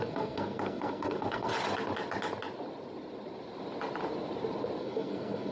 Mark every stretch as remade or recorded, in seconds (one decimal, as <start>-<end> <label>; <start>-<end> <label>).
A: 0.0-1.5 remade; 1.5-4.8 recorded; 4.8-5.5 remade